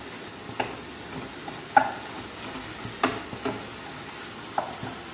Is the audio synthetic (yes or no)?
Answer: no